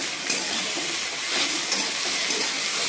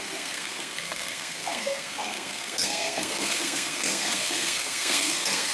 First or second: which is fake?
second